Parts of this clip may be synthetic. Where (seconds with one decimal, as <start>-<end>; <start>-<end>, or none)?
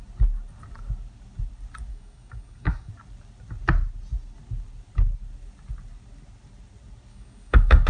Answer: 1.9-2.9; 7.1-7.9